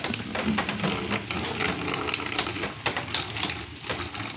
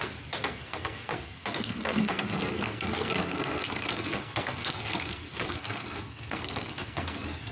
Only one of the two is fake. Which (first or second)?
second